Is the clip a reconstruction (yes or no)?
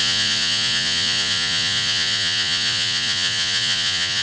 yes